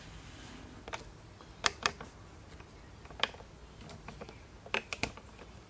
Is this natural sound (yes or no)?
yes